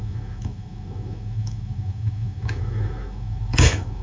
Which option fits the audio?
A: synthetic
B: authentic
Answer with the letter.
A